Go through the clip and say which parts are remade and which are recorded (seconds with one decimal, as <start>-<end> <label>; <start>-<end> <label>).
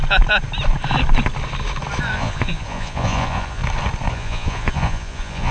0.0-2.0 recorded; 2.0-3.6 remade; 3.6-4.1 recorded; 4.1-5.5 remade